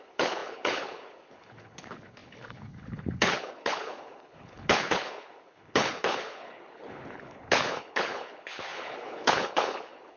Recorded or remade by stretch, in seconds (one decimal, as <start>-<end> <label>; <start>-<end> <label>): 0.0-10.2 remade